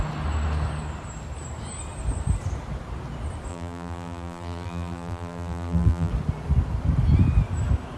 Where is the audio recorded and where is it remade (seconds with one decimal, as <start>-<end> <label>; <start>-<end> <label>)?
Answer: 0.0-3.5 recorded; 3.5-6.1 remade; 6.1-8.0 recorded